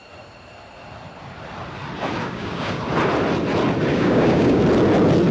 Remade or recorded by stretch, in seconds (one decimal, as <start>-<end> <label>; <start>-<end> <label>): 0.0-2.2 recorded; 2.2-2.8 remade; 2.8-3.9 recorded; 3.9-4.6 remade; 4.6-5.3 recorded